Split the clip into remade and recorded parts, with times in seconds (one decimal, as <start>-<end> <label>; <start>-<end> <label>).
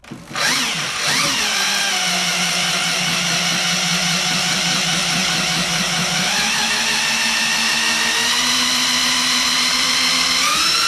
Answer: 0.0-10.9 recorded